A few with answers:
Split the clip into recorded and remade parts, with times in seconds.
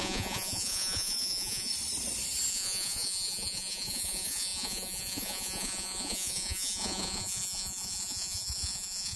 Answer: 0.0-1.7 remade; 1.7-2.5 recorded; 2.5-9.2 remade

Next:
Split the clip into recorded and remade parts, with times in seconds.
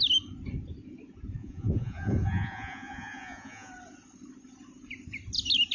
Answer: 0.0-1.4 recorded; 1.4-3.7 remade; 3.7-5.7 recorded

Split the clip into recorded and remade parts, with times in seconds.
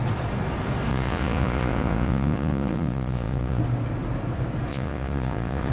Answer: 0.0-0.9 recorded; 0.9-3.6 remade; 3.6-4.7 recorded; 4.7-5.7 remade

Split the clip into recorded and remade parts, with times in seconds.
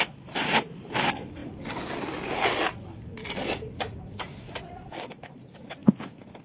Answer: 0.0-5.8 recorded; 5.8-6.4 remade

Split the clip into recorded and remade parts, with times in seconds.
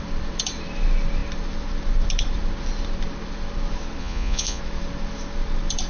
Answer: 0.0-4.0 recorded; 4.0-4.6 remade; 4.6-5.9 recorded